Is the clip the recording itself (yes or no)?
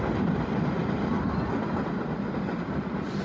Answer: yes